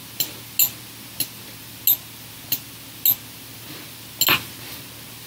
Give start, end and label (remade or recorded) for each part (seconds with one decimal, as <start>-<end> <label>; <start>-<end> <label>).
0.0-5.3 recorded